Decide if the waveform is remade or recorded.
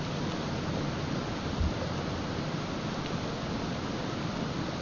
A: recorded